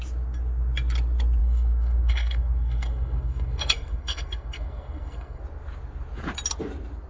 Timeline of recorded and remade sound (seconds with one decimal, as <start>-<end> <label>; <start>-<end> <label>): 0.0-1.4 recorded; 1.4-5.4 remade; 5.4-7.1 recorded